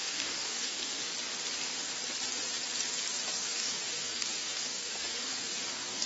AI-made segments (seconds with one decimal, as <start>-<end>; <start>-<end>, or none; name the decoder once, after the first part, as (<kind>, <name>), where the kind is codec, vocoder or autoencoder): 0.0-1.1 (codec, DAC); 3.1-6.1